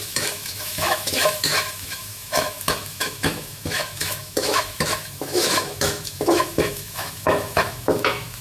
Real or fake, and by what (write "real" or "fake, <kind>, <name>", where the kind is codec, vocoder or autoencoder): fake, autoencoder, DAC-VAE